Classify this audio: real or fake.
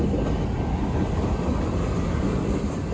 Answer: real